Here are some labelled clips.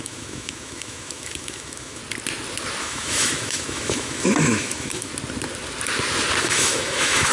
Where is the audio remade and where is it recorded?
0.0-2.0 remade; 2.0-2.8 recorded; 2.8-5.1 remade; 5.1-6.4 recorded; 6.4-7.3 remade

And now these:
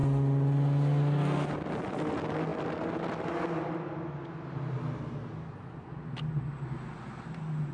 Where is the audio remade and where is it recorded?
0.0-7.7 recorded

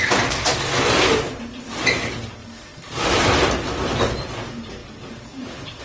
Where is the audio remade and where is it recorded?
0.0-2.4 recorded; 2.4-3.3 remade; 3.3-4.8 recorded; 4.8-5.8 remade

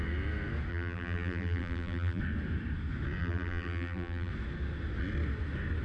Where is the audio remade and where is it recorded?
0.0-0.7 recorded; 0.7-2.2 remade; 2.2-3.2 recorded; 3.2-4.3 remade; 4.3-5.8 recorded